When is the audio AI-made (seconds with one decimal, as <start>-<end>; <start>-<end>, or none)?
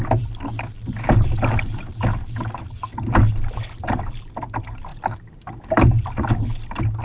none